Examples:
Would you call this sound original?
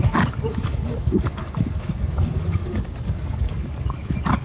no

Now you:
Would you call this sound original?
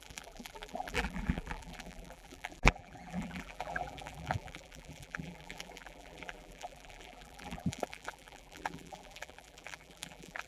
no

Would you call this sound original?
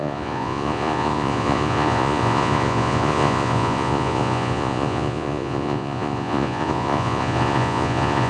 no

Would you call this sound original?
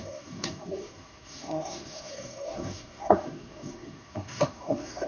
no